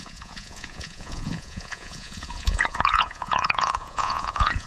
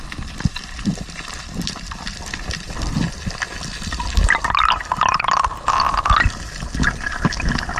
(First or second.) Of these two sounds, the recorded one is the second